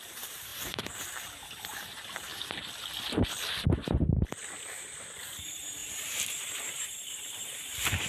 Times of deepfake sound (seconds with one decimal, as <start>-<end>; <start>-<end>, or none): 0.0-2.3; 4.8-8.1